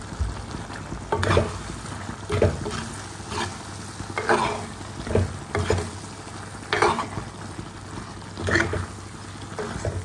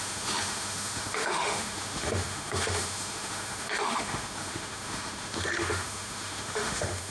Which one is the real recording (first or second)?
first